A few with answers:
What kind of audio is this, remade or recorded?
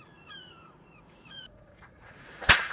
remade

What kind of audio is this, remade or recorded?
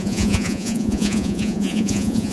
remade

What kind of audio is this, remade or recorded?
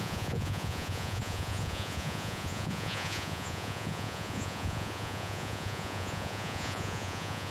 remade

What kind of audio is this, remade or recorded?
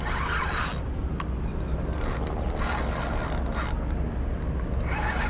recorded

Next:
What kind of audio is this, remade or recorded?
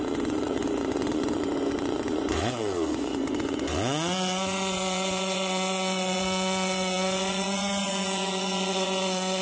remade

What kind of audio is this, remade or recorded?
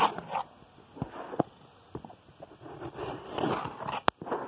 recorded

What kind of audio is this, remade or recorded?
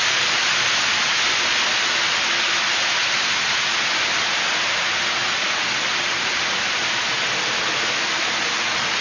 recorded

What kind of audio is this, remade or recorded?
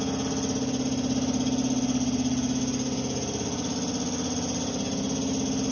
recorded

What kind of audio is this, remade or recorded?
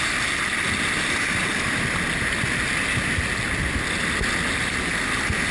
recorded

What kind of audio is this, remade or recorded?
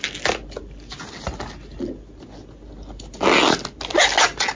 recorded